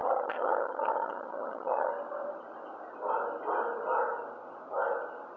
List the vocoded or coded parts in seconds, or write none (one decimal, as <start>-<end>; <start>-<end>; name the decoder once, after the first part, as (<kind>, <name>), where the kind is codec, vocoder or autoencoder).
0.0-1.9 (vocoder, HiFi-GAN)